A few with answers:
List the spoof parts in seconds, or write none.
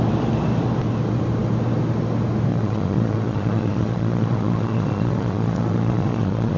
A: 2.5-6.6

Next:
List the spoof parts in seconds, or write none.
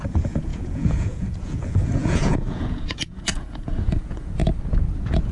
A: 0.0-4.4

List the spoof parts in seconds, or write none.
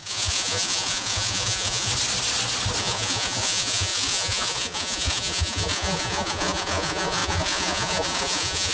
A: 0.0-1.9; 2.8-8.7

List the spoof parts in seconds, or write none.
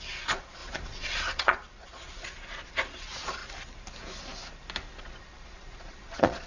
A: 0.0-3.4; 5.0-6.5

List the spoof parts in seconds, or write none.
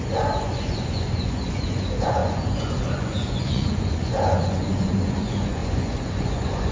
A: 0.0-6.7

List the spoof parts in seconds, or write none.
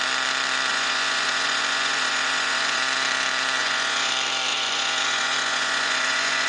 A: 0.7-2.8; 3.6-4.1; 4.5-6.5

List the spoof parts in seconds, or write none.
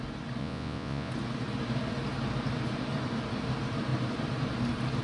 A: 0.4-1.1